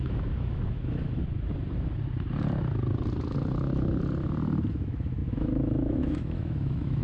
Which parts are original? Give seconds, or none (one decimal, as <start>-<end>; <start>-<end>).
1.2-4.7